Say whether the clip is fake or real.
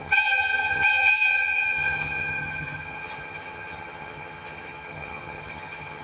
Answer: fake